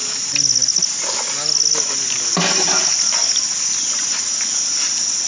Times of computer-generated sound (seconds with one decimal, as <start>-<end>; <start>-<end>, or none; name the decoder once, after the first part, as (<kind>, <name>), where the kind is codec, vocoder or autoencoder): none